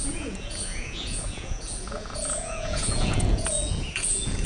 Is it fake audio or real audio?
fake